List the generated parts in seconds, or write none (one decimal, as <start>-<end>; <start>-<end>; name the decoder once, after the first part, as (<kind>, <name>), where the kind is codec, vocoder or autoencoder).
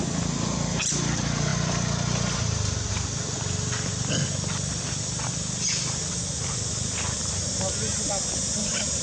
none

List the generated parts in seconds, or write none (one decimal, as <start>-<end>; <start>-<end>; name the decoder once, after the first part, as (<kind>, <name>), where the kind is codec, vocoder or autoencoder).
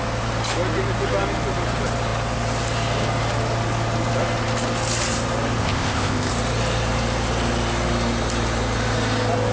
5.6-6.3 (codec, ZipCodec)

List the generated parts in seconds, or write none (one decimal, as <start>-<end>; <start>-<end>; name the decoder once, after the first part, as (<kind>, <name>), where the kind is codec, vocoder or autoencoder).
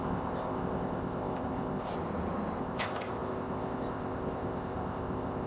0.0-1.9 (codec, ZipCodec); 2.6-5.5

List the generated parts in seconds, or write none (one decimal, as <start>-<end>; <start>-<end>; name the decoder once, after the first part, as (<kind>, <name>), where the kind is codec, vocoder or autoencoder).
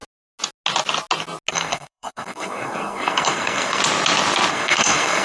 1.5-3.8 (codec, SNAC); 4.5-5.2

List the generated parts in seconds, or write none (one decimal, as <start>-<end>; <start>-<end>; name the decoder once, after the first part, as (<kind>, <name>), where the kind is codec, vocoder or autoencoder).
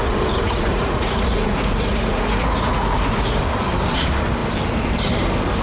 0.0-3.4 (vocoder, Vocos)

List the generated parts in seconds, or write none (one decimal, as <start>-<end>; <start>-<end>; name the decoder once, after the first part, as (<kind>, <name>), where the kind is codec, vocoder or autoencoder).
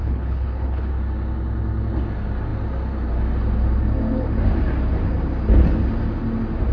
0.0-0.9 (codec, HILCodec)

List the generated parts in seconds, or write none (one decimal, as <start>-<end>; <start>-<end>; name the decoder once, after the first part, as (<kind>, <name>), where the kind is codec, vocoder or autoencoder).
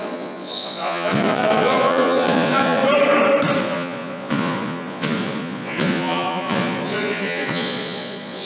0.0-2.8 (vocoder, Vocos); 3.6-8.5